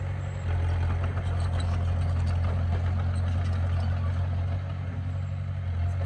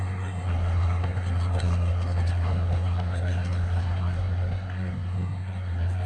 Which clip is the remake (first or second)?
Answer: second